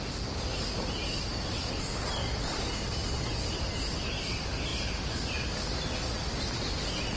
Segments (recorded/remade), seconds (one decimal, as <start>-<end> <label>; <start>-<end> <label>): 0.0-7.2 remade